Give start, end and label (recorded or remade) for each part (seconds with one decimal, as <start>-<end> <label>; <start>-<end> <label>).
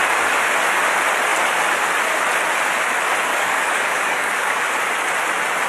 0.0-3.3 recorded; 3.3-4.6 remade; 4.6-5.7 recorded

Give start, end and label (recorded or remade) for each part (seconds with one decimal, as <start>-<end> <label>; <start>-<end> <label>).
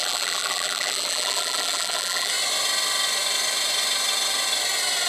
0.0-2.3 remade; 2.3-5.1 recorded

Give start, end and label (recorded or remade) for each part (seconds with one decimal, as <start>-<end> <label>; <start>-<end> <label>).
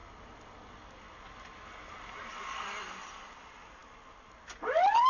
0.0-3.1 recorded; 3.1-3.8 remade; 3.8-5.1 recorded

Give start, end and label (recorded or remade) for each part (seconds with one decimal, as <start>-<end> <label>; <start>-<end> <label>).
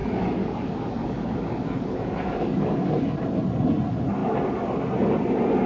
0.0-2.9 remade; 2.9-5.7 recorded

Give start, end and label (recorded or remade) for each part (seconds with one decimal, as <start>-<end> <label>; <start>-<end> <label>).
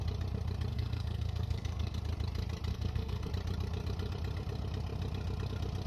0.0-0.7 recorded; 0.7-2.0 remade; 2.0-2.7 recorded; 2.7-3.3 remade; 3.3-5.9 recorded